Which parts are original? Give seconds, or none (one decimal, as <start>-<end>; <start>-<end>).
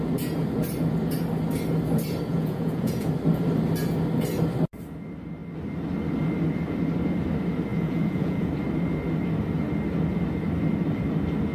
0.0-2.3; 3.1-7.7; 8.5-11.5